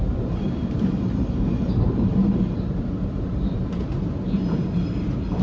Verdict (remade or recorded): remade